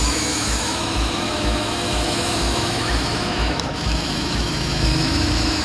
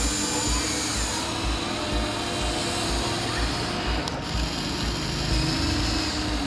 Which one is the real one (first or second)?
second